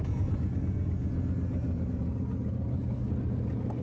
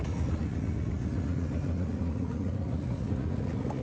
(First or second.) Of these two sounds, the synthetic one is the second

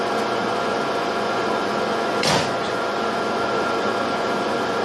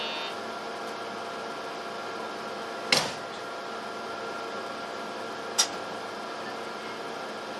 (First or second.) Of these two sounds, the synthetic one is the first